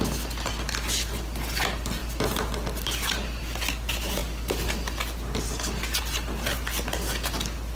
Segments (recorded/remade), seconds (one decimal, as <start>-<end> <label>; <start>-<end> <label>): 0.0-7.7 recorded